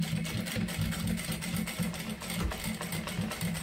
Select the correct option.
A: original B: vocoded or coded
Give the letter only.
A